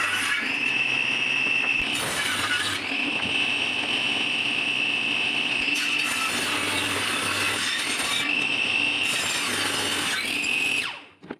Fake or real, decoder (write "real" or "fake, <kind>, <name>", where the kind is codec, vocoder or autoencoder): real